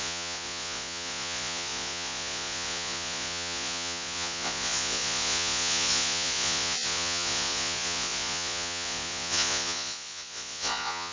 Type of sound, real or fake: fake